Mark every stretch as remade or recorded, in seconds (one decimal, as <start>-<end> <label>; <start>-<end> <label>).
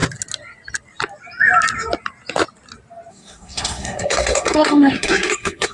0.0-3.1 recorded; 3.1-5.7 remade